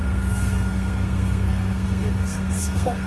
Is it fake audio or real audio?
fake